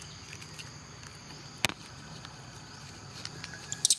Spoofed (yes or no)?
no